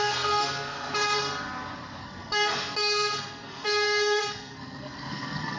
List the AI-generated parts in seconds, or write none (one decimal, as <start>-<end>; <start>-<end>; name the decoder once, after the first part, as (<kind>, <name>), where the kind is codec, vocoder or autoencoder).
0.0-0.9 (codec, SNAC); 2.0-5.6